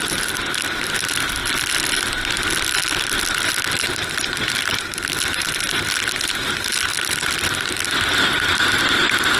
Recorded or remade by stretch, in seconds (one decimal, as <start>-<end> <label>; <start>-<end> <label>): 0.0-6.9 recorded; 6.9-8.6 remade; 8.6-9.4 recorded